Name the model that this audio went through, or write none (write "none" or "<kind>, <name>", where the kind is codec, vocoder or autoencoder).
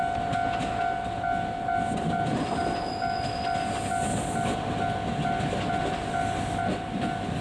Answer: none